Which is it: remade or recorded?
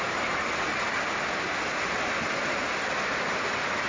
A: recorded